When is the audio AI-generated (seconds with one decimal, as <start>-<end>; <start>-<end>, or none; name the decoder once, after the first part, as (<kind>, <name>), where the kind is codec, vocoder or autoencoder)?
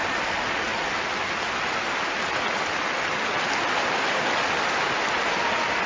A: none